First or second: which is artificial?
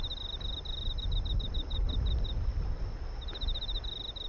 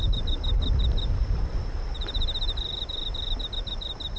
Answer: second